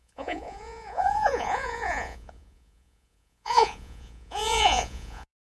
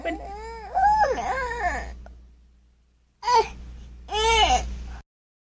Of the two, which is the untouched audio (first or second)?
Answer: second